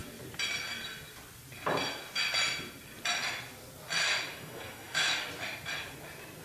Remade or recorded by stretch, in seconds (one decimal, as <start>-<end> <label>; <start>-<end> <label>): 0.0-4.3 recorded; 4.3-5.1 remade; 5.1-6.4 recorded